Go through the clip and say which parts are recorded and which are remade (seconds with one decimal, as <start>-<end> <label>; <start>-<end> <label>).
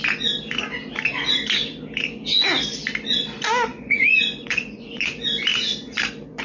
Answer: 0.0-3.7 recorded; 3.7-5.1 remade; 5.1-6.4 recorded